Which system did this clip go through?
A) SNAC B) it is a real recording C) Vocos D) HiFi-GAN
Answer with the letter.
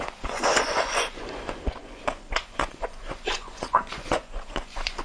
C